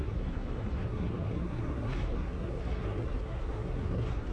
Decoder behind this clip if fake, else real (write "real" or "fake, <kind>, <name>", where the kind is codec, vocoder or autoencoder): fake, codec, SNAC